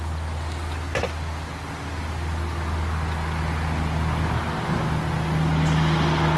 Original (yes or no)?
yes